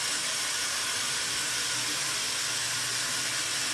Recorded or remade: recorded